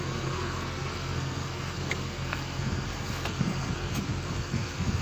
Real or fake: fake